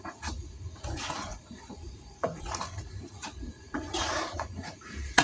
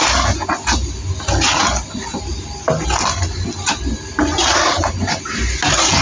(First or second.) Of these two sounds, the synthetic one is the first